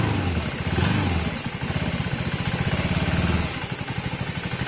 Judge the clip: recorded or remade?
recorded